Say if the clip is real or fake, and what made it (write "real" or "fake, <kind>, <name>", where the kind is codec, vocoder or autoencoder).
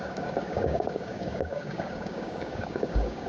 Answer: fake, codec, DAC